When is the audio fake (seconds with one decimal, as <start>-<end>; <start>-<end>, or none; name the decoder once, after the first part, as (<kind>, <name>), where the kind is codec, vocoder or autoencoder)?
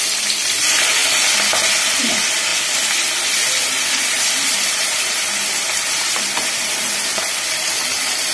0.0-1.0 (vocoder, BigVGAN v2); 1.7-2.5; 4.0-8.3